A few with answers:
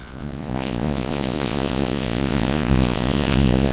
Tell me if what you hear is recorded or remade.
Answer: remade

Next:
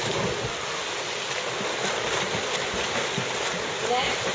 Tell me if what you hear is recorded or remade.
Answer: recorded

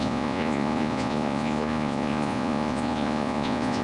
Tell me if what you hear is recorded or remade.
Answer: remade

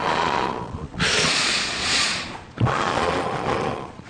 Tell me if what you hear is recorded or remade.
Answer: remade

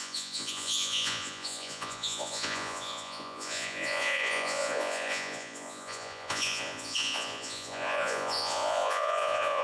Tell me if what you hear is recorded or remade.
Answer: remade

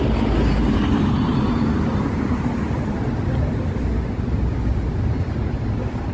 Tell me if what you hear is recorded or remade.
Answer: recorded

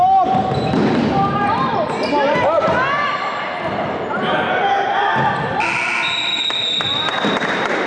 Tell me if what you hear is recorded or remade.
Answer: recorded